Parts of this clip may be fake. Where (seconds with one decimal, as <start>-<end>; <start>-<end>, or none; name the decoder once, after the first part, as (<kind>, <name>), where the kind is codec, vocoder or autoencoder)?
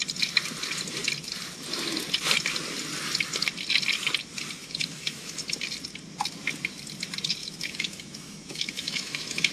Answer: 4.6-5.4 (autoencoder, DAC-VAE); 7.4-9.5